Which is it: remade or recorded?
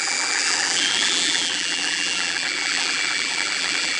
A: remade